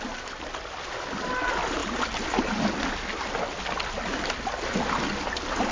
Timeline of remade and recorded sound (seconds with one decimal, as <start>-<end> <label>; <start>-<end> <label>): 0.0-5.7 recorded